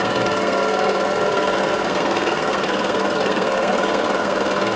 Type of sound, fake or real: fake